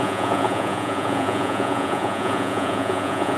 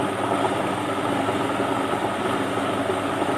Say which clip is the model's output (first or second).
first